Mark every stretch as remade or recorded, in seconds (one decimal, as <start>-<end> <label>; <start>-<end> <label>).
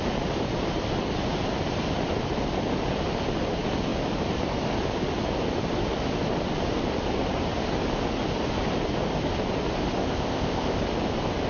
0.0-10.0 recorded; 10.0-10.8 remade; 10.8-11.5 recorded